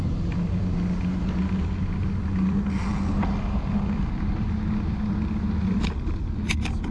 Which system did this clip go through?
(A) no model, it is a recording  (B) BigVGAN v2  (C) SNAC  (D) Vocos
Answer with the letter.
A